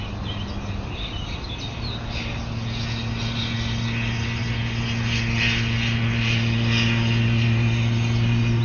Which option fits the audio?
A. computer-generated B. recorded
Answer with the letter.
B